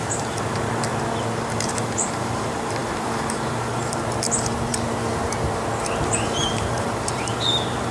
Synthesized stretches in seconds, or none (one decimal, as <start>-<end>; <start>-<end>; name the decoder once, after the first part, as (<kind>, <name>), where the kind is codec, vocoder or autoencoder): 0.0-0.9 (vocoder, BigVGAN v2); 1.6-7.9